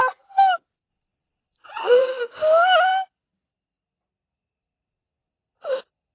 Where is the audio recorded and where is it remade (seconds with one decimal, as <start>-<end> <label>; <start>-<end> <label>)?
0.0-0.9 recorded; 0.9-2.2 remade; 2.2-6.1 recorded